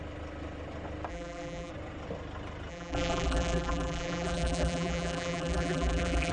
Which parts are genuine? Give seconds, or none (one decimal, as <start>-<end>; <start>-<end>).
0.0-1.1; 1.7-2.7

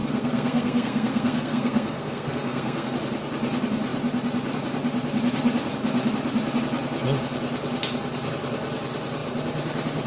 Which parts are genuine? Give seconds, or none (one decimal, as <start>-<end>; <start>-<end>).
2.9-10.1

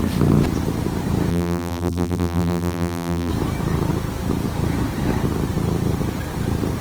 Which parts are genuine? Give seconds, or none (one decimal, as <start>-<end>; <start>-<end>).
0.0-1.3; 3.3-6.8

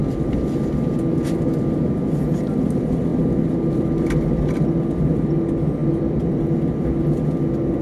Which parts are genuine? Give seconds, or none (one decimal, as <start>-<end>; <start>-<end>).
0.6-5.8; 6.4-7.8

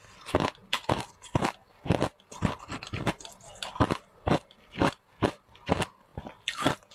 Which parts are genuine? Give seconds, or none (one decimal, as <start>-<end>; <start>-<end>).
0.0-6.9